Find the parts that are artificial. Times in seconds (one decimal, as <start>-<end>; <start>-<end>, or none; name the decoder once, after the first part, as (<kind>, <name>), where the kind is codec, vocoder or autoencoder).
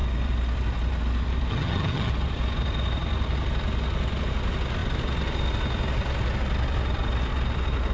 1.5-2.1 (vocoder, HiFi-GAN)